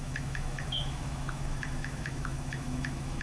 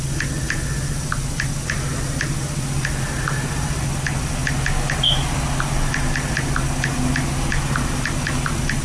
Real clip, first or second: second